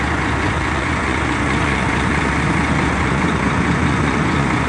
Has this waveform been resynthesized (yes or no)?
yes